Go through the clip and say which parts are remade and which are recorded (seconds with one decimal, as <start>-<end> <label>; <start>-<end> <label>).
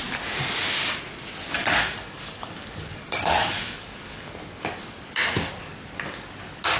0.0-1.6 recorded; 1.6-4.3 remade; 4.3-6.8 recorded